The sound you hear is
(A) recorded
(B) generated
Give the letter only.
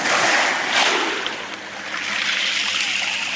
A